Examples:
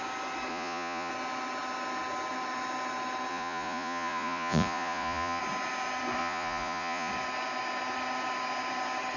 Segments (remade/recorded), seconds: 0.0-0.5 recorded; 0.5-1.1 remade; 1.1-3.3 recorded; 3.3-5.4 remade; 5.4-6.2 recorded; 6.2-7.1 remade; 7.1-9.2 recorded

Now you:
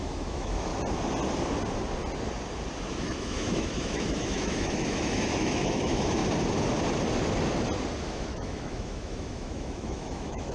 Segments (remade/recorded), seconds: 0.0-0.7 remade; 0.7-2.9 recorded; 2.9-6.2 remade; 6.2-8.0 recorded; 8.0-10.5 remade

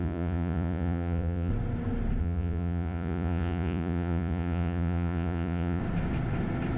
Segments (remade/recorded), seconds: 0.0-1.5 remade; 1.5-2.2 recorded; 2.2-5.8 remade; 5.8-6.8 recorded

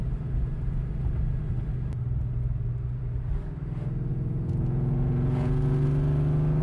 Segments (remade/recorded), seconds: 0.0-4.1 recorded; 4.1-5.6 remade; 5.6-6.6 recorded